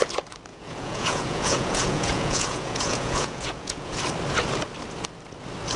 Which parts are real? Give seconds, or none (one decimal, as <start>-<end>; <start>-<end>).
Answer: 0.0-0.5; 4.0-5.8

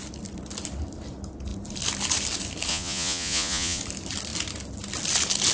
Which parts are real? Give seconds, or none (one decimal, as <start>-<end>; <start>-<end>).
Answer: 0.0-2.7; 3.8-5.5

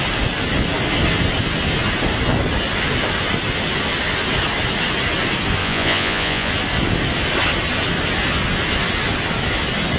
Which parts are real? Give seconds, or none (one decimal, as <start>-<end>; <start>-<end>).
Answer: 0.0-5.6; 6.5-10.0